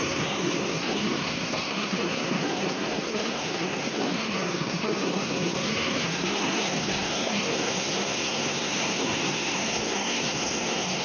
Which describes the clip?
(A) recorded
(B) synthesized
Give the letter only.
B